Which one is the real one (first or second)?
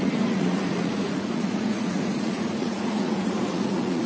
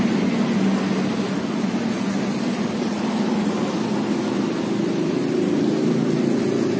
second